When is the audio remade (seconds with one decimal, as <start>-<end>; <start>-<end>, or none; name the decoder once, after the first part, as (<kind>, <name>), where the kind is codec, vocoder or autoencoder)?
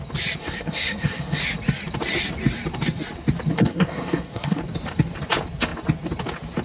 0.4-1.4 (codec, SNAC); 3.5-4.6